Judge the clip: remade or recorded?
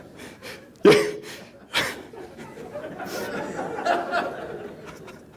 recorded